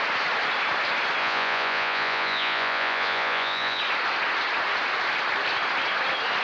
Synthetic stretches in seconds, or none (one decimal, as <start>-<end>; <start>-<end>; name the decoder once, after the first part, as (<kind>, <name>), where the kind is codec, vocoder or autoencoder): 1.2-3.8 (vocoder, Vocos)